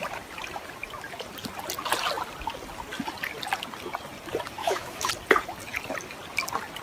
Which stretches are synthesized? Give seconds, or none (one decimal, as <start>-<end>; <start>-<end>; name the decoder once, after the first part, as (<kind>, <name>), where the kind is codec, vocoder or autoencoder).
4.6-5.1 (autoencoder, DAC-VAE)